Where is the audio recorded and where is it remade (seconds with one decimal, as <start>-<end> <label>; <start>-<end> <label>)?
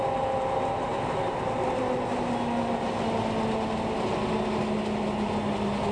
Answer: 0.0-5.9 recorded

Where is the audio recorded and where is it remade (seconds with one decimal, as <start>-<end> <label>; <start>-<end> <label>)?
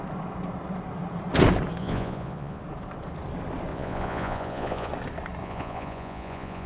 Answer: 0.0-1.8 recorded; 1.8-2.6 remade; 2.6-3.7 recorded; 3.7-4.9 remade; 4.9-5.4 recorded; 5.4-6.7 remade